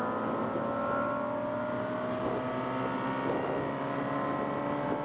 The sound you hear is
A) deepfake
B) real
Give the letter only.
B